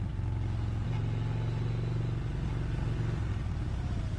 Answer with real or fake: real